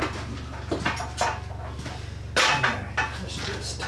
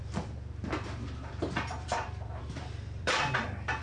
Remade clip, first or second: second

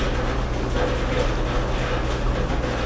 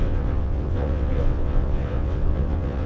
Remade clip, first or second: second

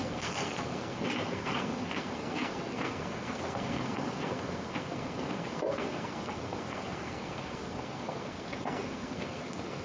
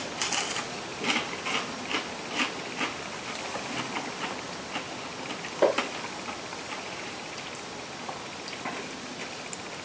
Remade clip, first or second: first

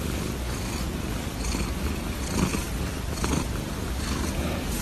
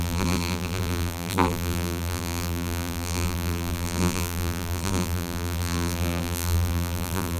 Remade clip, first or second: second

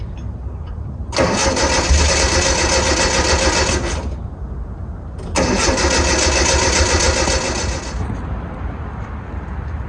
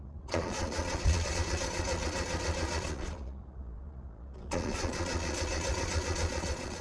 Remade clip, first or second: second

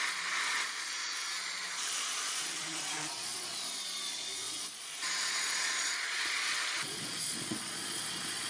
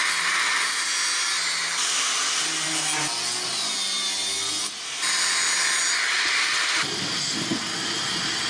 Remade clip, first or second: first